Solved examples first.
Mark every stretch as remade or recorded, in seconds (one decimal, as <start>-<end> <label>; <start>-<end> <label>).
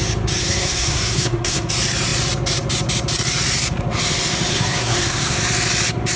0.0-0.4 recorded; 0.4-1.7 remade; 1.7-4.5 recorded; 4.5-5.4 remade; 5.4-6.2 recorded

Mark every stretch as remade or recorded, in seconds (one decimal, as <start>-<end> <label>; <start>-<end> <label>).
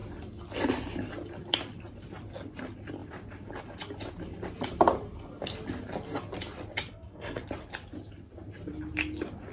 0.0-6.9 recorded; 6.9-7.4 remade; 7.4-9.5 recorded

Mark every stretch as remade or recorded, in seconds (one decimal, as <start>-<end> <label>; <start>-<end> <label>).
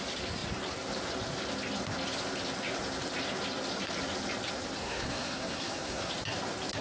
0.0-4.8 recorded; 4.8-6.1 remade; 6.1-6.8 recorded